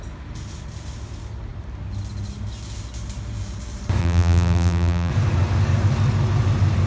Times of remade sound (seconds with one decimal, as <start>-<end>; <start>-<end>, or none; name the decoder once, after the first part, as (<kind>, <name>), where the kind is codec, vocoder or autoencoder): 4.0-5.1 (vocoder, BigVGAN v2)